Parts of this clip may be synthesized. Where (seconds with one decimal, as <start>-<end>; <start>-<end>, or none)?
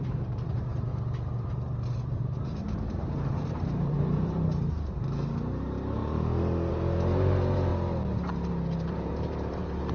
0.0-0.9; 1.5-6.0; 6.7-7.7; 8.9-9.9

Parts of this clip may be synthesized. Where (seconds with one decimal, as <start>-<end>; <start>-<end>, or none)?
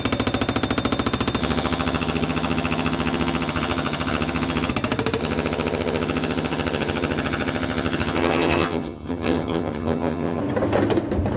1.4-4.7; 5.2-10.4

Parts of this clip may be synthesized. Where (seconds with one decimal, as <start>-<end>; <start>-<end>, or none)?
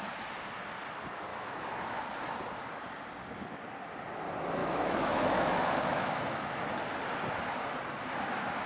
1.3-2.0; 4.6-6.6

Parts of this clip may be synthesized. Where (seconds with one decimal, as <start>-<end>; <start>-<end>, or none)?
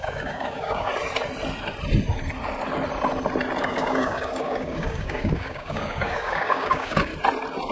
0.0-0.9; 3.6-7.1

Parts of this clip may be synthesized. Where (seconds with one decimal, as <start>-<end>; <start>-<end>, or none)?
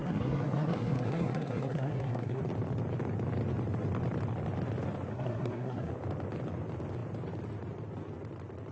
0.0-2.4; 5.1-5.9